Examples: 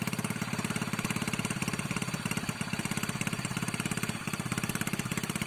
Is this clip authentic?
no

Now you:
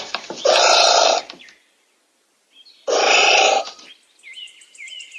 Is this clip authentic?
yes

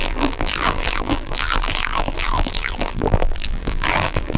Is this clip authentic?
no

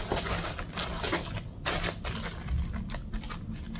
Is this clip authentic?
yes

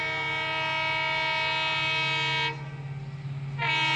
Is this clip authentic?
yes